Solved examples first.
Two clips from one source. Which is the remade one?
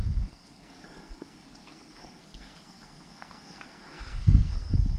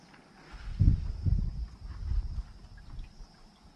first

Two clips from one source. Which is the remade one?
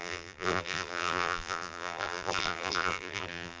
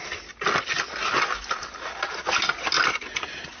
first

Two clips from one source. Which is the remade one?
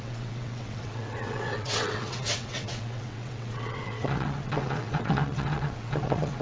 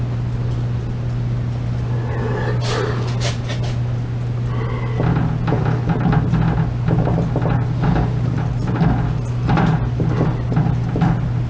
first